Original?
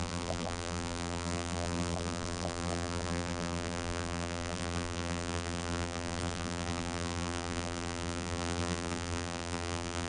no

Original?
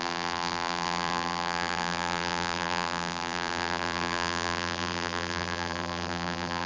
no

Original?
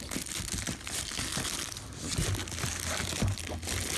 yes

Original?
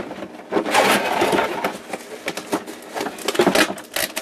yes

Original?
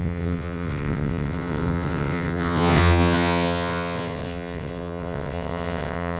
no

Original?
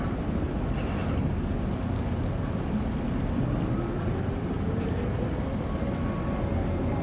yes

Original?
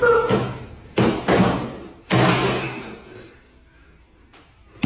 yes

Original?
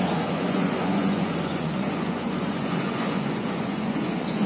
no